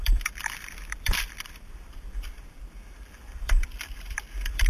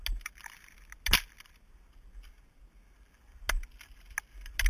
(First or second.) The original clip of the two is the second